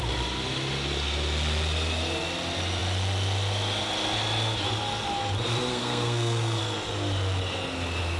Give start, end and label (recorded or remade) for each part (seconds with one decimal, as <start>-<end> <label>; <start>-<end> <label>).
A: 0.0-5.7 recorded; 5.7-6.6 remade; 6.6-8.2 recorded